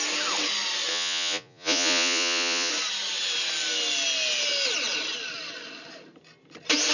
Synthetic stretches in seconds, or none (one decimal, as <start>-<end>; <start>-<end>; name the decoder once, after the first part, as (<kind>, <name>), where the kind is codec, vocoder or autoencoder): 0.9-2.7 (vocoder, Vocos)